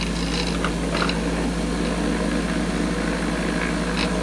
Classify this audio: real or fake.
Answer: real